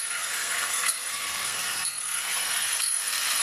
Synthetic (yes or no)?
yes